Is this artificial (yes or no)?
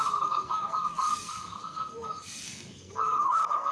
yes